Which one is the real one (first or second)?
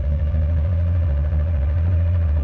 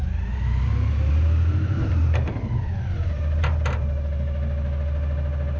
second